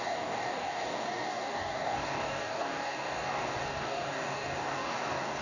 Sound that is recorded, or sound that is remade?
remade